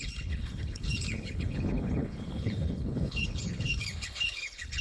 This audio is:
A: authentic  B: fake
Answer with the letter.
B